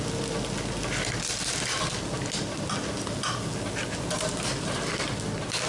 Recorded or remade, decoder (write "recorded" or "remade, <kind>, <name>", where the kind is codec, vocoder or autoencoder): recorded